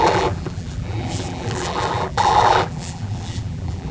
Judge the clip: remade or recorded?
remade